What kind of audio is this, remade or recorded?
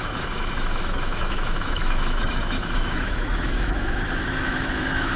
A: remade